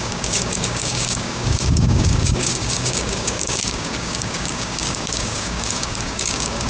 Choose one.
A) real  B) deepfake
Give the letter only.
B